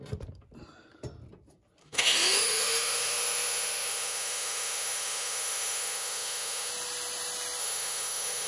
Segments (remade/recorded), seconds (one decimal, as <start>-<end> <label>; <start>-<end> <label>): 0.0-1.8 recorded; 1.8-6.7 remade; 6.7-7.6 recorded; 7.6-8.5 remade